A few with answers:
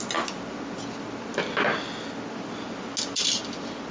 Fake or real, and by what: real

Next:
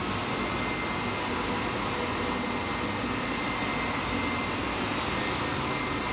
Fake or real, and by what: real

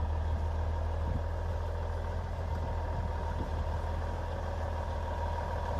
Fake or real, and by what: real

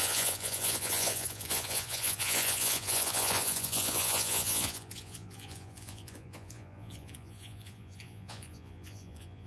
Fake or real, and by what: fake, vocoder, Vocos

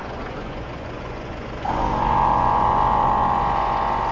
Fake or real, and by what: fake, vocoder, Vocos